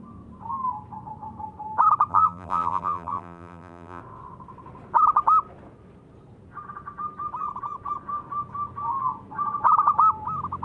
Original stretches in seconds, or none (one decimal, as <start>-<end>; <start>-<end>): 0.0-2.1; 4.0-10.6